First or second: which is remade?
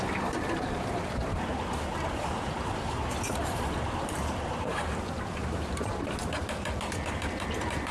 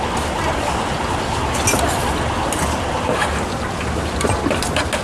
first